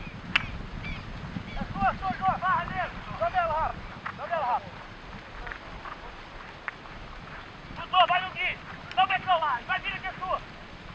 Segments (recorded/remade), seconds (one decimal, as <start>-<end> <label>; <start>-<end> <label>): 0.0-10.9 recorded

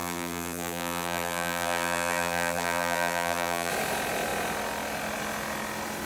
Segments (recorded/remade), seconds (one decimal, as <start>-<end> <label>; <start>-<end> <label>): 0.0-3.7 remade; 3.7-6.1 recorded